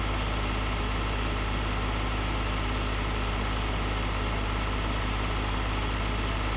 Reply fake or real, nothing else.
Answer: real